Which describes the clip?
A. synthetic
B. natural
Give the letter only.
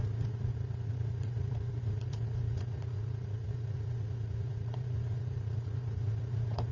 A